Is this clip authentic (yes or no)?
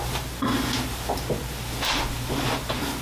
yes